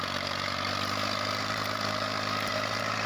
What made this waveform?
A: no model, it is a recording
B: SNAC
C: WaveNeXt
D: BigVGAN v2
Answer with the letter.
D